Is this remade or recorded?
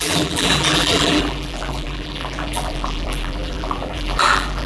remade